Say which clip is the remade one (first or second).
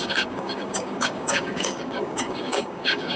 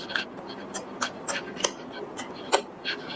first